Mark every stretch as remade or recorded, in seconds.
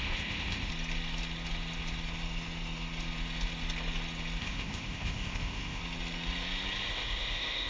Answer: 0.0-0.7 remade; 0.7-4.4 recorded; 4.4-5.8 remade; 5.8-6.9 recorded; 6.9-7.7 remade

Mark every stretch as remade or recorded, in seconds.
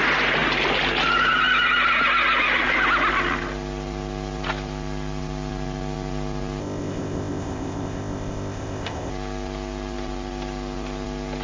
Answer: 0.0-6.6 recorded; 6.6-9.1 remade; 9.1-11.4 recorded